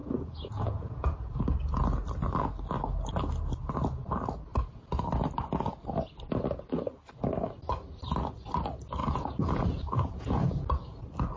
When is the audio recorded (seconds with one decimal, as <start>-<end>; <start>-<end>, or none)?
1.4-9.0; 10.5-11.4